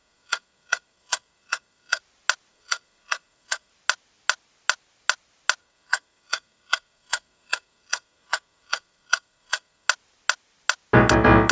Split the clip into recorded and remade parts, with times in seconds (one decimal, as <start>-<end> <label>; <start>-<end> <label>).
0.0-2.0 remade; 2.0-2.5 recorded; 2.5-3.7 remade; 3.7-5.6 recorded; 5.6-9.9 remade; 9.9-11.5 recorded